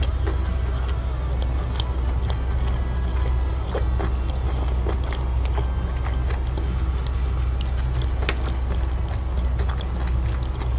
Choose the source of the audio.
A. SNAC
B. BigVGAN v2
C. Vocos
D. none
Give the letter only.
D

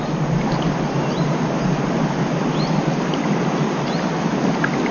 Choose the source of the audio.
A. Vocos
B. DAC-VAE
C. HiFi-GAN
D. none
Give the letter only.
D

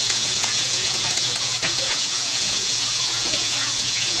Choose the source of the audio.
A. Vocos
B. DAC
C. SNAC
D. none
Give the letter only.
A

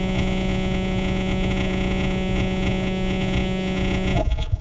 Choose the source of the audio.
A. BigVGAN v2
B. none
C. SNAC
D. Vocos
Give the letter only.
D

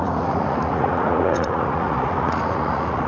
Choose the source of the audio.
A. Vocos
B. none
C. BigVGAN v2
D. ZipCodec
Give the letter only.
A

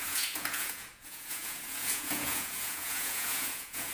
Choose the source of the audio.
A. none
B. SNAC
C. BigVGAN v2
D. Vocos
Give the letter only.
D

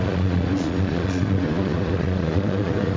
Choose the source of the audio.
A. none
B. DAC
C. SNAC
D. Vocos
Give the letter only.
D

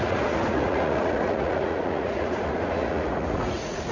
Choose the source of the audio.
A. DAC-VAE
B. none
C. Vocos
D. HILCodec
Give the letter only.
C